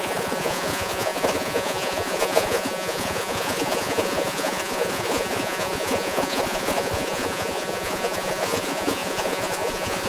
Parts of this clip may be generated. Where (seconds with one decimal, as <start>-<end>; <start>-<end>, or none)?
0.0-10.1